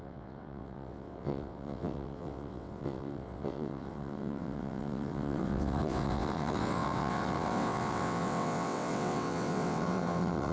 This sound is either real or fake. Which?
fake